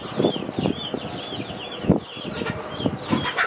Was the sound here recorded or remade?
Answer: remade